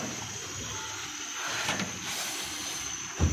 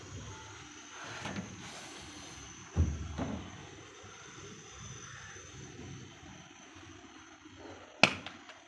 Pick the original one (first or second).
second